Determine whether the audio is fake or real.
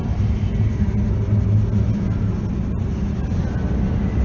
real